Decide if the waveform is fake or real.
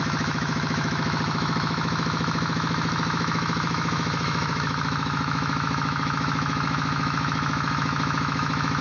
fake